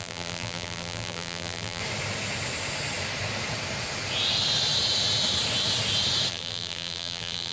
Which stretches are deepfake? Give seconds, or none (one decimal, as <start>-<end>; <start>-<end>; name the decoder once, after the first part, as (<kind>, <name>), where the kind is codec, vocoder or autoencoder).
0.0-1.8 (vocoder, BigVGAN v2); 6.3-7.5